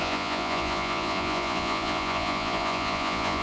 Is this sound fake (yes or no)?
yes